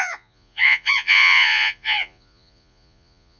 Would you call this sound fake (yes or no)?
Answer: yes